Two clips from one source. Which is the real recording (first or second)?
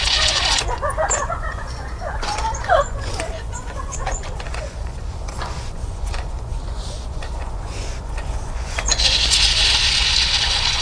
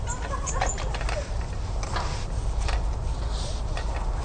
second